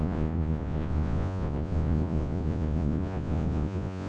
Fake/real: fake